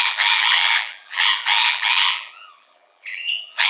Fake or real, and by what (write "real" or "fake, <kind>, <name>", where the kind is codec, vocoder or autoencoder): fake, vocoder, BigVGAN v2